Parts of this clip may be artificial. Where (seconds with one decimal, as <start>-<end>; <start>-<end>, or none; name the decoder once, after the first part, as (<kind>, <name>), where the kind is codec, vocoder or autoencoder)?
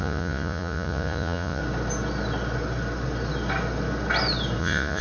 0.0-1.6 (vocoder, Vocos); 4.6-5.0